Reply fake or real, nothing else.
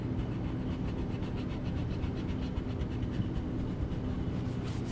real